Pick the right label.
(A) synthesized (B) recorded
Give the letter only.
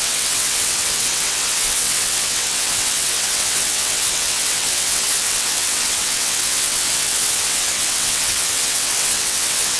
A